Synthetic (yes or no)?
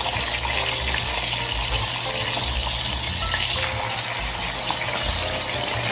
no